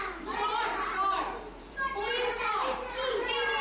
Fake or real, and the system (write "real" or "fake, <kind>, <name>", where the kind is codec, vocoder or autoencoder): fake, vocoder, BigVGAN v2